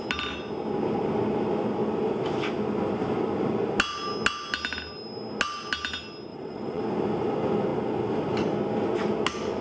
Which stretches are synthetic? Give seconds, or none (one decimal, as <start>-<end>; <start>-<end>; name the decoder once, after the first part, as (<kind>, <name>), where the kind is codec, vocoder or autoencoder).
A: 6.3-6.8 (vocoder, WaveNeXt)